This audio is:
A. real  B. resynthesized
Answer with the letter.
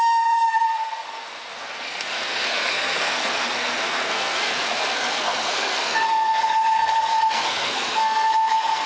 B